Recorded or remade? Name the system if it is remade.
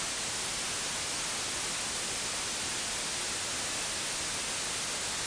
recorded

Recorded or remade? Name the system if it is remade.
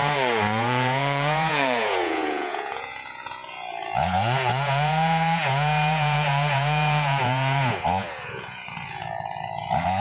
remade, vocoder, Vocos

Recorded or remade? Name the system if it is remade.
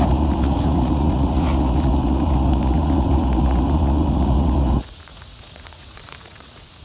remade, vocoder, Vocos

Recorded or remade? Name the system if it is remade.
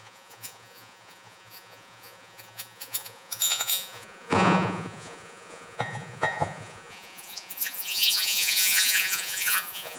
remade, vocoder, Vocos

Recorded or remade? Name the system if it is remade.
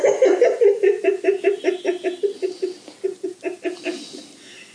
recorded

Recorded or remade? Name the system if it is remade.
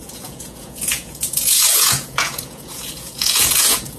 remade, vocoder, Vocos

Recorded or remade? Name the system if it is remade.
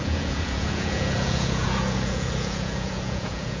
remade, vocoder, Vocos